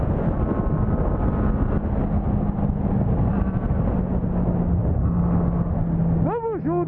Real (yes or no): yes